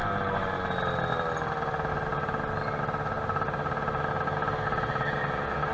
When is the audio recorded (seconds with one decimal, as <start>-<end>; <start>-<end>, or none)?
0.0-5.7